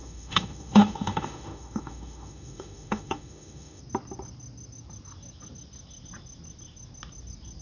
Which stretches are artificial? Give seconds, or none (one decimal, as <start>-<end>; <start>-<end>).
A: 0.0-3.8